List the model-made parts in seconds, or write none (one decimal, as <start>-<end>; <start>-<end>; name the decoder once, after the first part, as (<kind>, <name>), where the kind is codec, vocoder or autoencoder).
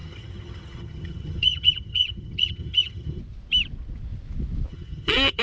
0.0-3.2 (vocoder, HiFi-GAN); 4.7-5.4